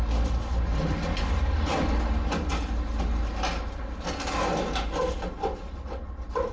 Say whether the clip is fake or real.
real